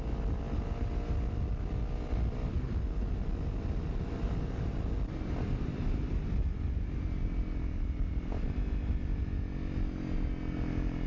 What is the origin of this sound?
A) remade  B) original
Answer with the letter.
B